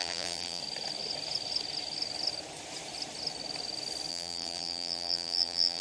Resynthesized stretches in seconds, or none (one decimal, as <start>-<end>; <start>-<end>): 0.0-0.6; 4.1-5.8